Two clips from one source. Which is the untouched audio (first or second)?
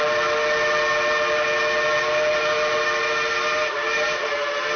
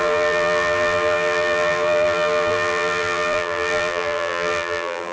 first